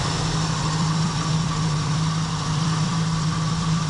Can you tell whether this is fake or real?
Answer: fake